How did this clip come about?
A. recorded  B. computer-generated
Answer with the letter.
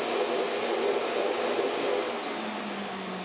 A